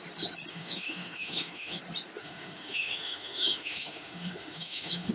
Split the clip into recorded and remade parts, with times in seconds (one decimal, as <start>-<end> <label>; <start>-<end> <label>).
0.0-0.5 recorded; 0.5-1.8 remade; 1.8-2.2 recorded; 2.2-5.1 remade